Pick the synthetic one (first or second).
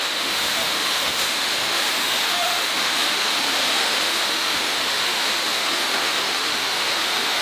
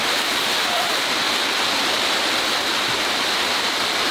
first